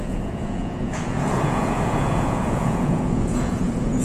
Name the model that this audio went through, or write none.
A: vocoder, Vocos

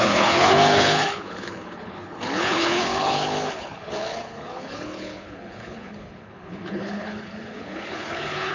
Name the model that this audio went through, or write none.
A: codec, HILCodec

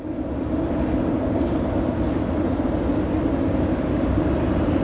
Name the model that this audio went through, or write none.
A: none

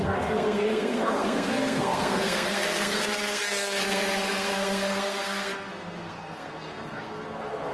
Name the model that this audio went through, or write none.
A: codec, SNAC